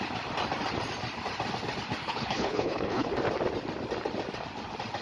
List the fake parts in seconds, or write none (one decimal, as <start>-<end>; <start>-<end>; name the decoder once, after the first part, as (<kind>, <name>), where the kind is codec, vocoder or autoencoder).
2.0-3.1 (codec, HILCodec)